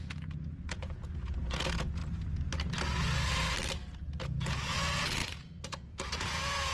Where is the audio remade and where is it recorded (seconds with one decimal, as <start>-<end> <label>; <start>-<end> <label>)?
0.0-2.0 remade; 2.0-4.2 recorded; 4.2-6.7 remade